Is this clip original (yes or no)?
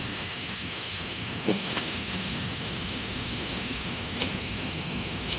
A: no